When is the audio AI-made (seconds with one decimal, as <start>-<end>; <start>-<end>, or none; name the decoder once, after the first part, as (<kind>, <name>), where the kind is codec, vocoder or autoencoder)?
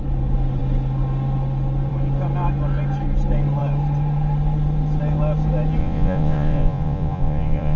5.8-7.8 (vocoder, Vocos)